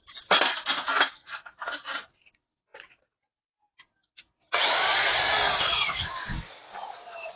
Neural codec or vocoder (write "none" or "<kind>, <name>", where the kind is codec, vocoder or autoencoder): none